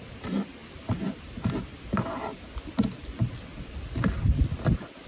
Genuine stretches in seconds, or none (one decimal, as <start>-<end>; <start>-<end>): 0.0-5.1